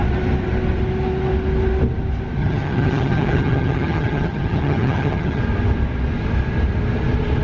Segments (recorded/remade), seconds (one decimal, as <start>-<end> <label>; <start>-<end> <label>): 0.0-2.4 recorded; 2.4-5.4 remade; 5.4-7.4 recorded